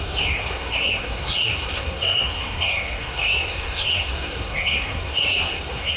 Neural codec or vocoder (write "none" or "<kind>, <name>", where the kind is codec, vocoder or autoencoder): codec, SNAC